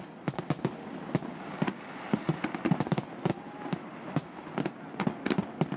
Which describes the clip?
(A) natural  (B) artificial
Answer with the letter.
A